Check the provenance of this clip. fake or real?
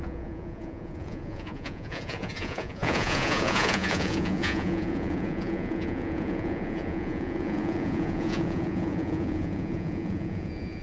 fake